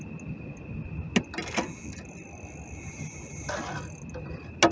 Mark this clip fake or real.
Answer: real